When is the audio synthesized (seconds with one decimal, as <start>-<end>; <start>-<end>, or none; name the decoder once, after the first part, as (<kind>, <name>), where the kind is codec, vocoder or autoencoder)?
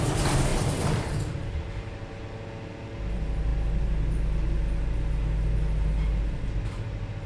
0.5-2.1 (vocoder, BigVGAN v2)